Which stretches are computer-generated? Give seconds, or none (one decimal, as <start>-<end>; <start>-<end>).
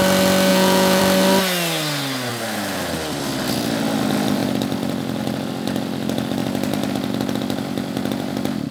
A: 0.5-1.0